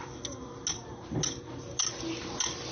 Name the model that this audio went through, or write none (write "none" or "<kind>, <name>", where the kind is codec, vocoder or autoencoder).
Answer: none